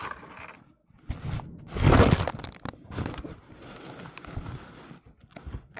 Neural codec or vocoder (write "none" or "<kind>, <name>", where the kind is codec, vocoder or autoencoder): none